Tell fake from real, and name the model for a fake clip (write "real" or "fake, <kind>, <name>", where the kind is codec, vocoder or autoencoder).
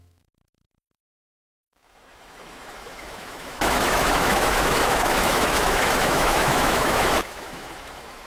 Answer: fake, autoencoder, DAC-VAE